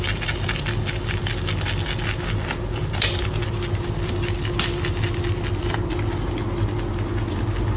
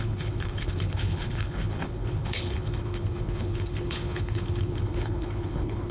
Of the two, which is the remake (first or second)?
second